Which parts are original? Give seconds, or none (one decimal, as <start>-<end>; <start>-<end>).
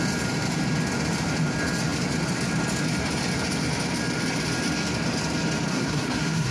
0.0-5.7